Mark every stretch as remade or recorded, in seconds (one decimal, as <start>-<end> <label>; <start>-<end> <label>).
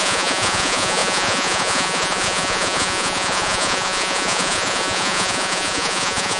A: 0.0-6.4 remade